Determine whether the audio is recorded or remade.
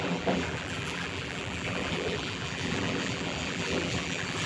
remade